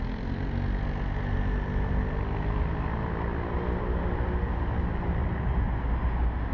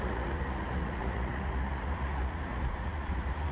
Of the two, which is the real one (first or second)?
first